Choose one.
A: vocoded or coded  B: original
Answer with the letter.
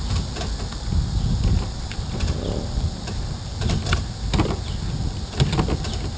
B